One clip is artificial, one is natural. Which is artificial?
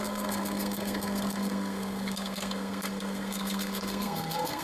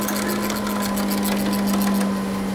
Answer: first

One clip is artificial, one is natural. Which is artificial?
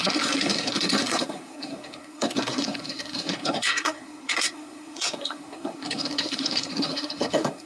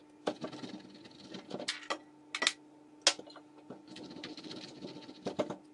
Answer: first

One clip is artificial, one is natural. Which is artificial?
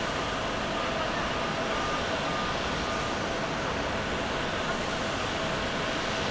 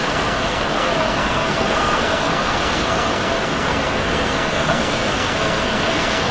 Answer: second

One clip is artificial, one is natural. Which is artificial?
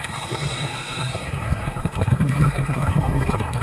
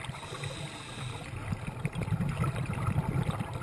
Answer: first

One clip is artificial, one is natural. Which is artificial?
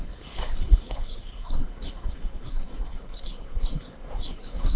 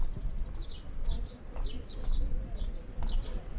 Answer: first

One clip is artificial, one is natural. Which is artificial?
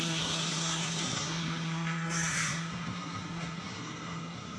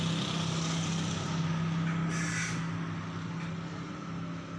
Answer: first